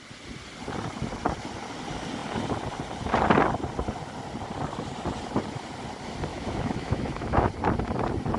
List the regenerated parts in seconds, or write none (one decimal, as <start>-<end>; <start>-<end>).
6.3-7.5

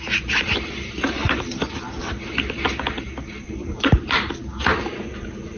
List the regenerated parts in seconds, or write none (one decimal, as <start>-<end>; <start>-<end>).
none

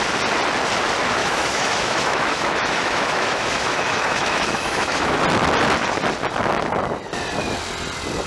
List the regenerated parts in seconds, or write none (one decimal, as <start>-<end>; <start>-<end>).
1.2-5.2